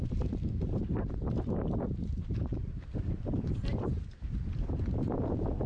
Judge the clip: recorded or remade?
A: remade